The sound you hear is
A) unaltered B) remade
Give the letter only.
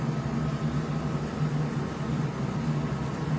A